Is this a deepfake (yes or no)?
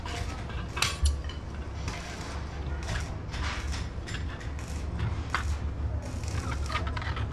no